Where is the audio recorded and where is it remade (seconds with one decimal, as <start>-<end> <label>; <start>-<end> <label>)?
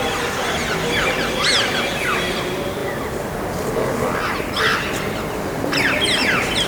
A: 0.0-6.7 recorded